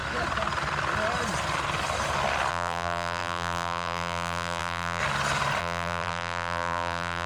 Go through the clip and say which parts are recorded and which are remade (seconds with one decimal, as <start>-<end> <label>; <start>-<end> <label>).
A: 0.0-2.5 recorded; 2.5-5.0 remade; 5.0-5.6 recorded; 5.6-7.3 remade